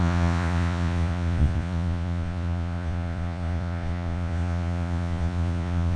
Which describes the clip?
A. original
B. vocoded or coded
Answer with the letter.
B